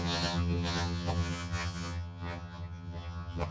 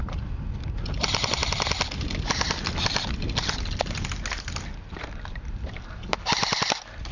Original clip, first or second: second